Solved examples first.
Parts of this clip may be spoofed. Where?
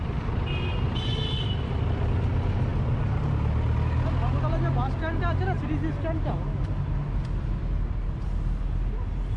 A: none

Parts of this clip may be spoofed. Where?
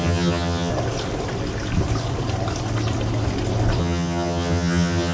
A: 0.0-0.7 (vocoder, HiFi-GAN); 3.8-5.1